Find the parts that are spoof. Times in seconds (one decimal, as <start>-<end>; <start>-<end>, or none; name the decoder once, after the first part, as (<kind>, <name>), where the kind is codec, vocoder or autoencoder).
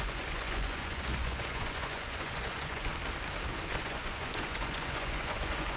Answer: 0.0-2.9 (vocoder, Vocos); 3.7-5.8